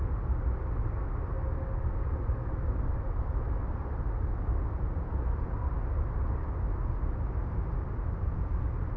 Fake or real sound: real